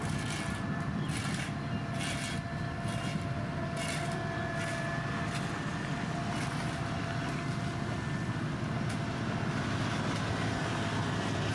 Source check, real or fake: real